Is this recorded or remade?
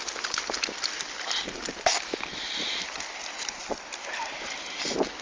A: recorded